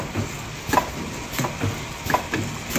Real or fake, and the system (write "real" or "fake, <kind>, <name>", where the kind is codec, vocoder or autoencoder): real